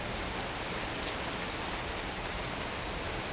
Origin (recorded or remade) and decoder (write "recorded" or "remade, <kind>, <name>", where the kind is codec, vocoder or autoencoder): remade, vocoder, BigVGAN v2